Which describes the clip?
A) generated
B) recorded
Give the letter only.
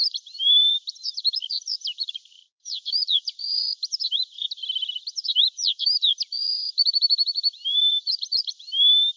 A